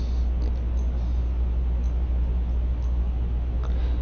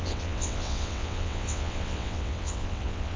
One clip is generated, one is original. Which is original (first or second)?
first